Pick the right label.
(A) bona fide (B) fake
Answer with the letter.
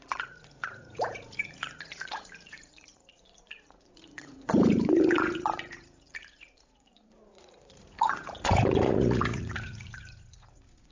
B